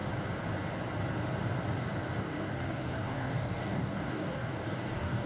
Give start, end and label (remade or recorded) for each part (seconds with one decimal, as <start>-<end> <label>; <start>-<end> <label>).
0.0-2.2 recorded; 2.2-5.3 remade